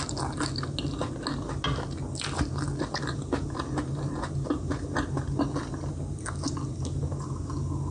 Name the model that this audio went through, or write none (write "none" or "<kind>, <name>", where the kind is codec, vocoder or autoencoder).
none